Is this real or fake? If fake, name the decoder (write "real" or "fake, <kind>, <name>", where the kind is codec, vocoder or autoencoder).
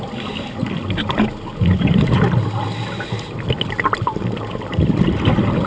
real